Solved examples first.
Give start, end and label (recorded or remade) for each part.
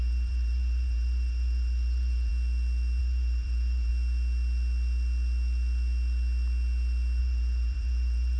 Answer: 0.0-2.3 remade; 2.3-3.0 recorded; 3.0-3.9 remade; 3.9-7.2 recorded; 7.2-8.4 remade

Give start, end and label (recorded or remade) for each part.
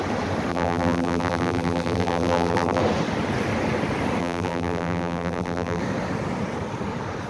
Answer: 0.0-0.5 recorded; 0.5-2.8 remade; 2.8-4.2 recorded; 4.2-5.8 remade; 5.8-7.3 recorded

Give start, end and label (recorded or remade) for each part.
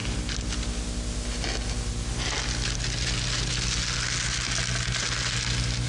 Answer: 0.0-5.9 recorded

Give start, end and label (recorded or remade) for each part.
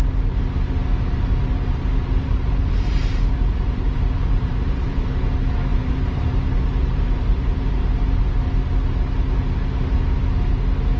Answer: 0.0-0.9 recorded; 0.9-5.1 remade; 5.1-5.7 recorded; 5.7-6.3 remade; 6.3-6.7 recorded; 6.7-8.2 remade; 8.2-11.0 recorded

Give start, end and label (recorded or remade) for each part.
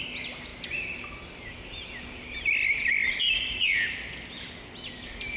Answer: 0.0-2.6 recorded; 2.6-4.6 remade; 4.6-5.4 recorded